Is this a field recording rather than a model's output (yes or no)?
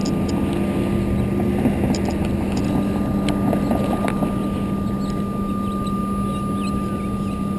yes